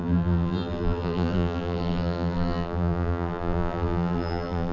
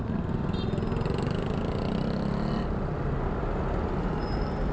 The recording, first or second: second